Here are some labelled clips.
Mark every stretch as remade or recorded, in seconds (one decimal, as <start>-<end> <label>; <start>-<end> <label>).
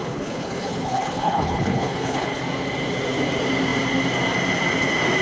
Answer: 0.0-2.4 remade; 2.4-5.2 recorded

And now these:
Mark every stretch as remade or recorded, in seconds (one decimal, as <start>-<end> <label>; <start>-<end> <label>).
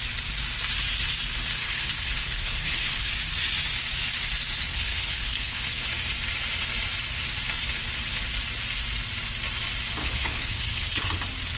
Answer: 0.0-1.6 recorded; 1.6-3.1 remade; 3.1-4.7 recorded; 4.7-5.6 remade; 5.6-10.0 recorded; 10.0-11.1 remade; 11.1-11.6 recorded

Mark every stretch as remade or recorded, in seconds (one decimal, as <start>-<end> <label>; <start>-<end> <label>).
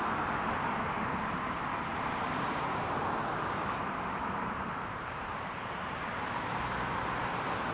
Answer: 0.0-1.9 recorded; 1.9-6.5 remade; 6.5-7.7 recorded